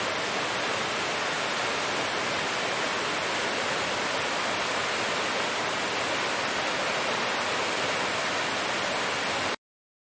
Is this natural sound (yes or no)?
yes